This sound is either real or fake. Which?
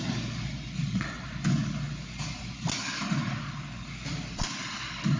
real